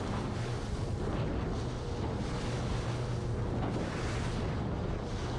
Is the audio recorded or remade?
recorded